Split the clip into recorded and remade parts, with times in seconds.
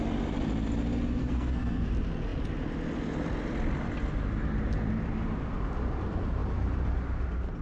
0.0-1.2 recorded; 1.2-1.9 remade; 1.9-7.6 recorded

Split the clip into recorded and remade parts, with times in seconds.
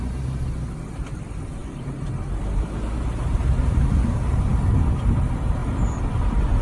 0.0-6.6 recorded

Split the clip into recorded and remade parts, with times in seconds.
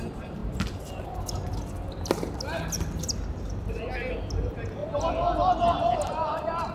0.0-6.7 recorded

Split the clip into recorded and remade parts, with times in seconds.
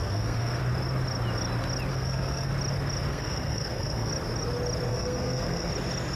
0.0-0.6 remade; 0.6-1.9 recorded; 1.9-2.5 remade; 2.5-3.1 recorded; 3.1-4.1 remade; 4.1-4.9 recorded; 4.9-5.7 remade; 5.7-6.2 recorded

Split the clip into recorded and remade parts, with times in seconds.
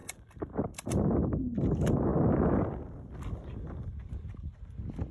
0.0-5.1 recorded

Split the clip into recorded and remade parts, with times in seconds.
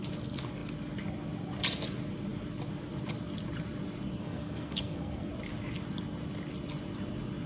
0.0-4.2 recorded; 4.2-5.3 remade; 5.3-7.5 recorded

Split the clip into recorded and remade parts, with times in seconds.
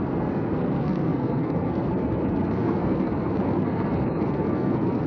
0.0-5.1 remade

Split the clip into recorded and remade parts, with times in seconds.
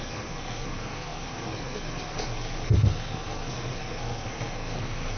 0.0-5.2 remade